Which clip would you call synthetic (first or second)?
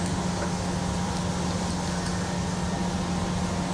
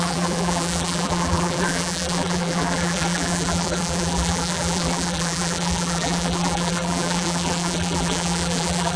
second